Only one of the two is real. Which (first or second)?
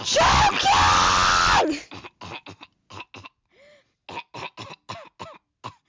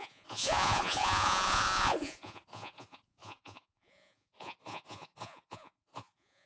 first